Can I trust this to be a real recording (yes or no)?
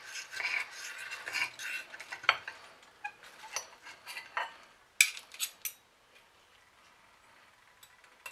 yes